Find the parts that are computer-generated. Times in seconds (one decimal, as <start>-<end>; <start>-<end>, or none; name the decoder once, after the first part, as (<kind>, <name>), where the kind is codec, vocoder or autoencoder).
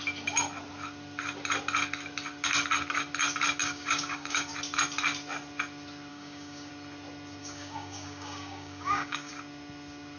3.6-4.5 (codec, DAC); 6.1-6.7; 7.4-9.3